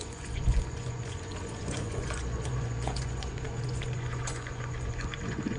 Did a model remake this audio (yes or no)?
yes